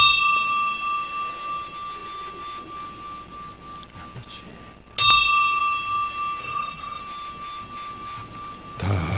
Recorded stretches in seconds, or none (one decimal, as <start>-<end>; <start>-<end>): 0.0-6.4; 7.0-9.2